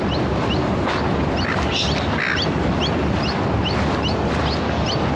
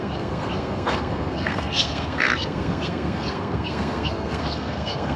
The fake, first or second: second